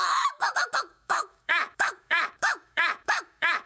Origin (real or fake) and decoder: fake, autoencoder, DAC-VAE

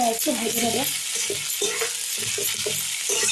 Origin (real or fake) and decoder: real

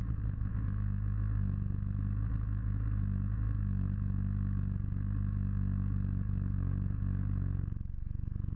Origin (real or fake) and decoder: fake, autoencoder, DAC-VAE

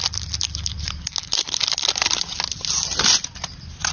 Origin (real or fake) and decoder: real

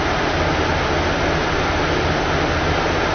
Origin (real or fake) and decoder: real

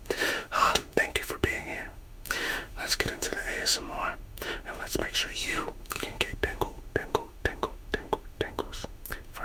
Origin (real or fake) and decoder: fake, autoencoder, DAC-VAE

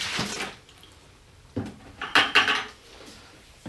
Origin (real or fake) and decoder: real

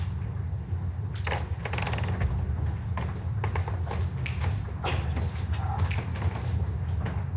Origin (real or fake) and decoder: real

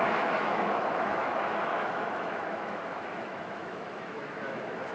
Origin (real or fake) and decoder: fake, autoencoder, DAC-VAE